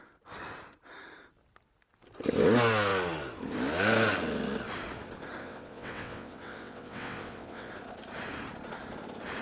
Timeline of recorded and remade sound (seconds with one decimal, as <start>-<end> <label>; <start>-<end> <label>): 0.0-5.4 recorded; 5.4-7.7 remade; 7.7-9.4 recorded